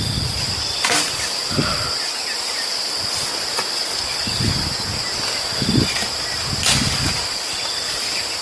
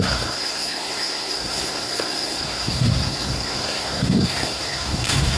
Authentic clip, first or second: first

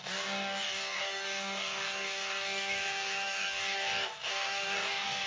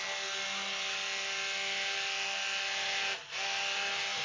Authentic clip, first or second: second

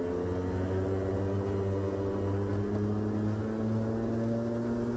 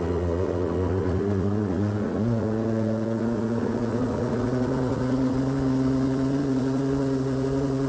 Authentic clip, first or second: first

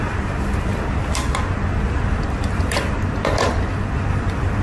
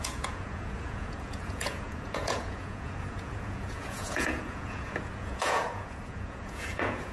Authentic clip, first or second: first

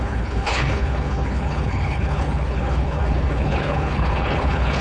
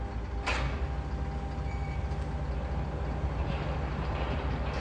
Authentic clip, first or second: second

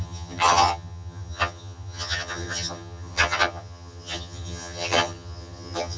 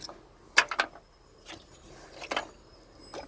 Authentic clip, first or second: second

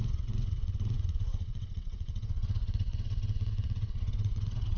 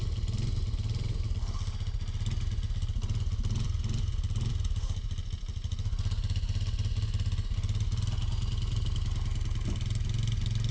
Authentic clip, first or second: second